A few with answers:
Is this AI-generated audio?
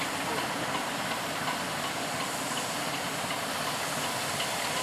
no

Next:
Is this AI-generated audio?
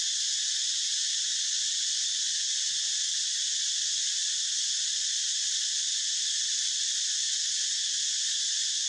no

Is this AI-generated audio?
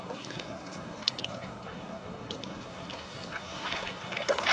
yes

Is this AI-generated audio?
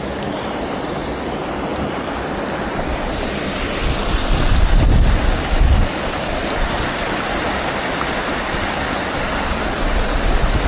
no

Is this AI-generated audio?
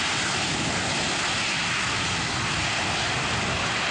no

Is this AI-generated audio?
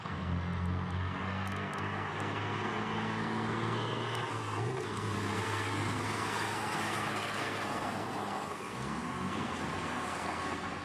yes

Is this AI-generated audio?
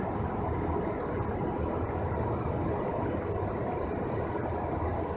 no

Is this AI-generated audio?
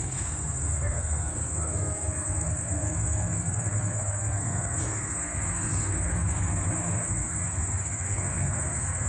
yes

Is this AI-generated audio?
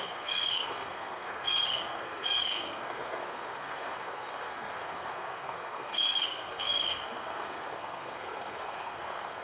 yes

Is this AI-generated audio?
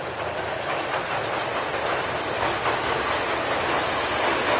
no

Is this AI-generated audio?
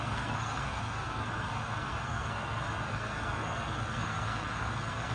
yes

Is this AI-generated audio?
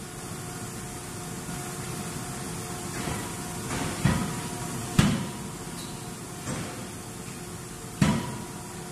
no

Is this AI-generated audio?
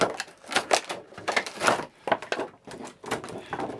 no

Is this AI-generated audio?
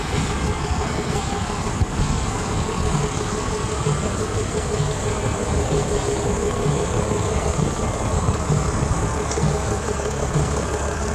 yes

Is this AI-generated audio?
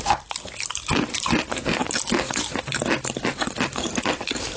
no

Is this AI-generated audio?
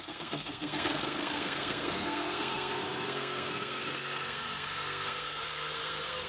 yes